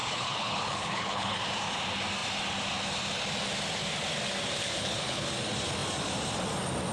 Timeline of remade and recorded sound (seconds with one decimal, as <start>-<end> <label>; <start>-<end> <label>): 0.0-1.4 remade; 1.4-4.6 recorded; 4.6-5.3 remade; 5.3-6.9 recorded